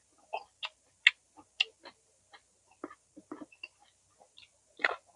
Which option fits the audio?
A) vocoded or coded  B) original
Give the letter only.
B